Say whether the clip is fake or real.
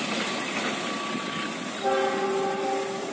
real